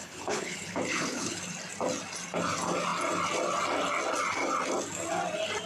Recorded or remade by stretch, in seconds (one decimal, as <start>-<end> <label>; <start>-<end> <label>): 0.0-1.4 remade; 1.4-5.7 recorded